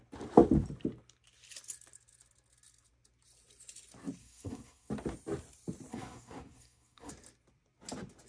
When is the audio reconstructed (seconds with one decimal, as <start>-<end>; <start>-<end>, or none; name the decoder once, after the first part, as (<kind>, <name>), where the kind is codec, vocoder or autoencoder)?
4.2-4.9 (codec, SNAC); 5.9-7.1